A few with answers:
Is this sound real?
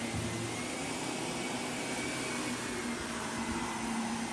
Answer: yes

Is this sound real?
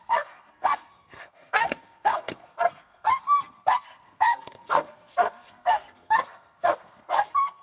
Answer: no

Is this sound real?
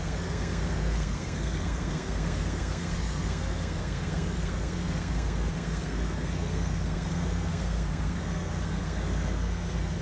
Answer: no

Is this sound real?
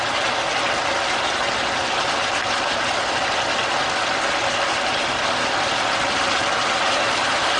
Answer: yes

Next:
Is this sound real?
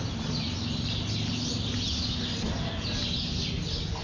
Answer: yes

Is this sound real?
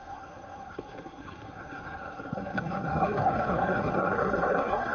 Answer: no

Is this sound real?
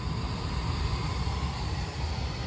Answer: yes